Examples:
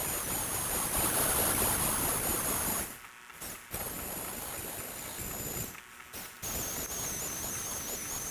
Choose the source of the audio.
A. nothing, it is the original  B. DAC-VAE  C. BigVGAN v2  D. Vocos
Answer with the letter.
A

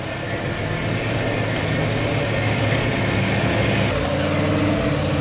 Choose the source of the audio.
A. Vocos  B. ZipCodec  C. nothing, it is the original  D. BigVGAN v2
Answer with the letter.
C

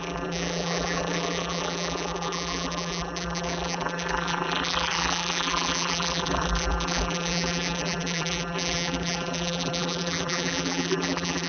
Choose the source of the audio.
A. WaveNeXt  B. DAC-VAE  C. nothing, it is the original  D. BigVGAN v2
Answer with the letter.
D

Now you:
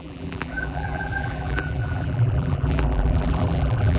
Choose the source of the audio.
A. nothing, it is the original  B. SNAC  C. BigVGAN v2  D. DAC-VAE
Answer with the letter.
C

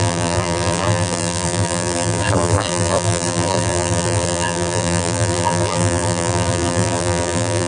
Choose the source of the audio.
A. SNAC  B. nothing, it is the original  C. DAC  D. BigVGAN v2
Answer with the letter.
D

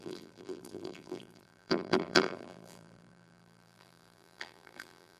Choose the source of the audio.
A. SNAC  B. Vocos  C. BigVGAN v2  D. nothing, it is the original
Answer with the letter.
C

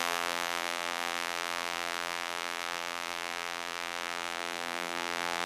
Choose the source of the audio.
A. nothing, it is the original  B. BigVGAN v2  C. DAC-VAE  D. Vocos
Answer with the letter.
B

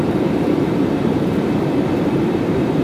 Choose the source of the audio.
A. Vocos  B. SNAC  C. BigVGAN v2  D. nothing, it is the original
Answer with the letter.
C